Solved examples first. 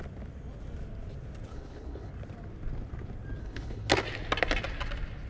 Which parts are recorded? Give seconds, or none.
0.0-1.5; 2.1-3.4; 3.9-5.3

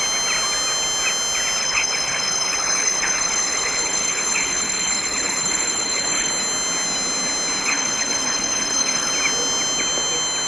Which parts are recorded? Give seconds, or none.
0.0-1.6; 6.3-7.6; 9.1-10.5